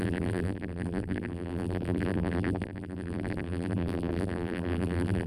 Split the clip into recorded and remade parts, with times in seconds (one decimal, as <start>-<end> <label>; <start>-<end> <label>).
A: 0.0-5.3 remade